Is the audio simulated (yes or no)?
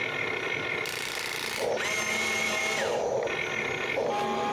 no